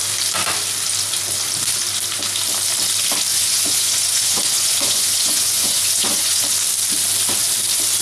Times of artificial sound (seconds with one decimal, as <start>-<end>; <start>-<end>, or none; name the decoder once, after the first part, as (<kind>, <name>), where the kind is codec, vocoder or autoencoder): 3.3-6.4 (vocoder, Vocos)